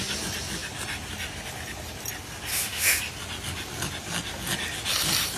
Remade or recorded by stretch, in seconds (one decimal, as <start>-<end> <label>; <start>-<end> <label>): 0.0-2.5 recorded; 2.5-3.0 remade; 3.0-5.4 recorded